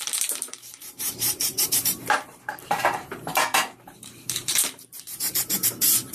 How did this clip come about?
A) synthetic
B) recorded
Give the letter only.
A